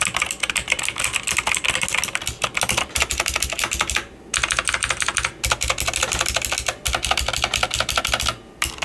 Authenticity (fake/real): real